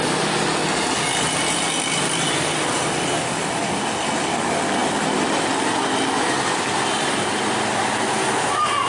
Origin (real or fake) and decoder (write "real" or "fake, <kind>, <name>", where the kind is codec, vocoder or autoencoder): real